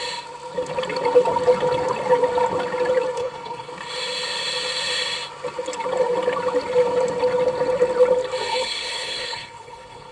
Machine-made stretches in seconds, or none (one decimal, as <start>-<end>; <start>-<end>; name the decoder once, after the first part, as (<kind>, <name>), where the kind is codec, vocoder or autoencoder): 3.2-3.7 (codec, HILCodec); 8.5-10.1